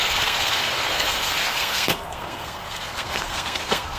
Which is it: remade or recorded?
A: remade